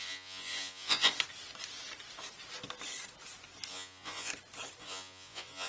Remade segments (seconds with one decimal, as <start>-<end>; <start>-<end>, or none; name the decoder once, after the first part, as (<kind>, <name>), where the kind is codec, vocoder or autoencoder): 0.0-1.1 (vocoder, Vocos); 3.7-4.3; 4.8-5.7